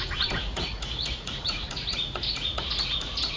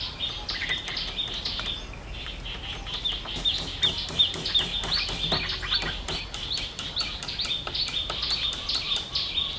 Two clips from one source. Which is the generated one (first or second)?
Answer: first